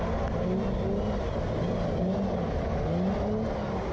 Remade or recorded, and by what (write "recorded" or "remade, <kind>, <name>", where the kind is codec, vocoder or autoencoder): recorded